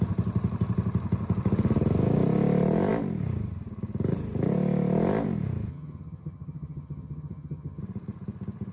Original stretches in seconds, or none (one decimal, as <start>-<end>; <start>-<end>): 0.0-5.7; 7.8-8.7